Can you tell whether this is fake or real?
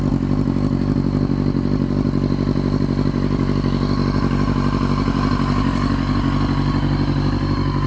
real